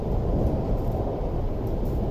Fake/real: real